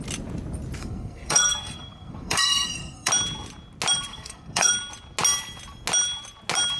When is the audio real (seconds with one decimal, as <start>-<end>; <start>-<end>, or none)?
0.0-0.8; 3.1-4.1; 4.7-6.8